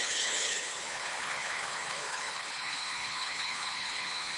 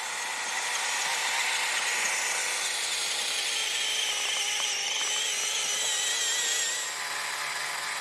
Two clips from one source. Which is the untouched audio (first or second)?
second